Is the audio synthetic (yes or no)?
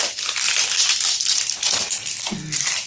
no